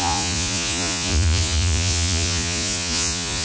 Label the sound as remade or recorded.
remade